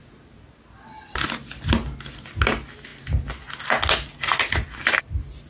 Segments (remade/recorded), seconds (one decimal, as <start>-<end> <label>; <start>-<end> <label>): 0.0-5.5 recorded